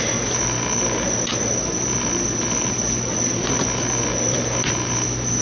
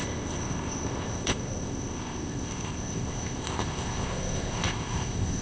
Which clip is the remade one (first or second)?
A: second